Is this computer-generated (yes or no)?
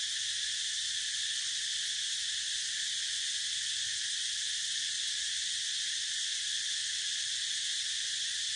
no